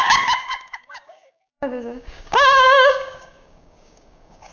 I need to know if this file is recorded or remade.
remade